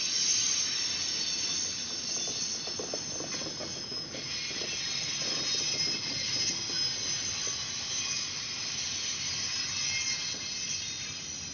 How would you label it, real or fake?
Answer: real